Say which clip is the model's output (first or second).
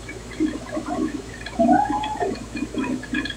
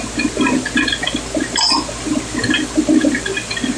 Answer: first